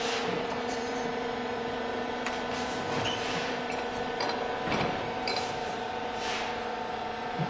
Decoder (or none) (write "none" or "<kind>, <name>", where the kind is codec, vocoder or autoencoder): vocoder, BigVGAN v2